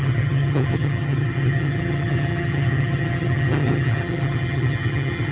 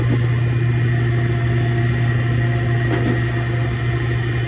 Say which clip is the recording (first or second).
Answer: second